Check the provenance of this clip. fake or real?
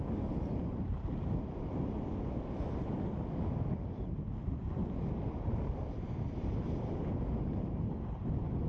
real